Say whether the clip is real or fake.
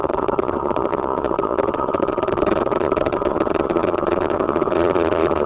fake